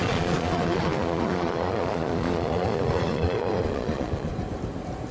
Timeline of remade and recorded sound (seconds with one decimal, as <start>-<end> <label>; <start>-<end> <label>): 0.0-4.3 remade; 4.3-5.1 recorded